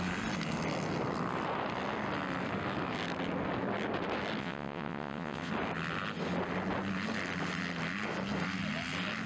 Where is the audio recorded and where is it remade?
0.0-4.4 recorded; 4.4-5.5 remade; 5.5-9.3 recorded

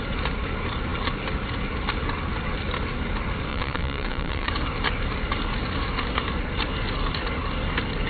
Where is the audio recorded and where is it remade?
0.0-3.5 recorded; 3.5-4.5 remade; 4.5-8.1 recorded

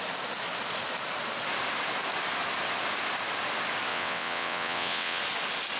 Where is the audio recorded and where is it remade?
0.0-3.9 recorded; 3.9-5.2 remade; 5.2-5.8 recorded

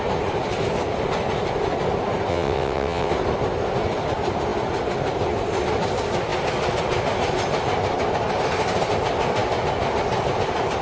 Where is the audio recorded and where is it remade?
0.0-2.3 recorded; 2.3-3.1 remade; 3.1-10.8 recorded

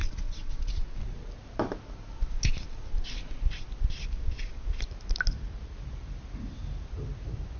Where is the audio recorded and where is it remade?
0.0-0.7 remade; 0.7-7.6 recorded

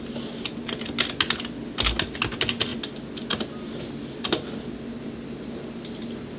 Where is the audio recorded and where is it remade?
0.0-6.4 recorded

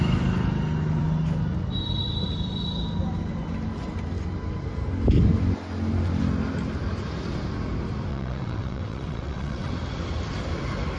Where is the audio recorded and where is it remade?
0.0-8.1 recorded; 8.1-9.7 remade; 9.7-11.0 recorded

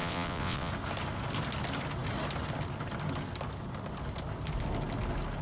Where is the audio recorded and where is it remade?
0.0-0.7 remade; 0.7-5.4 recorded